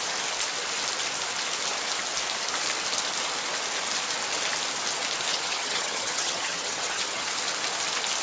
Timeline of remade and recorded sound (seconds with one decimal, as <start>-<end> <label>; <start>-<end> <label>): 0.0-5.3 recorded; 5.3-7.3 remade; 7.3-8.2 recorded